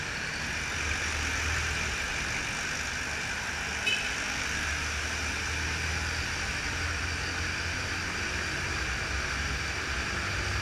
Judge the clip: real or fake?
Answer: real